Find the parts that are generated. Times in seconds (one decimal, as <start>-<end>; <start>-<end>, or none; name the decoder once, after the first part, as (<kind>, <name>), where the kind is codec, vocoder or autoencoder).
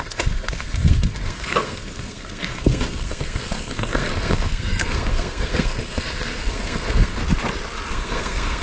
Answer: 0.0-7.2 (codec, SNAC); 7.9-8.6